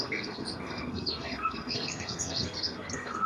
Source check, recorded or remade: remade